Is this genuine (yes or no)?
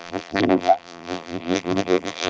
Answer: no